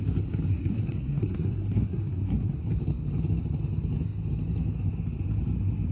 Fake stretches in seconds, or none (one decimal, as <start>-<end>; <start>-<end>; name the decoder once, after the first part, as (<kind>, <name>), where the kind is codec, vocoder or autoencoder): 0.5-2.7 (codec, SNAC)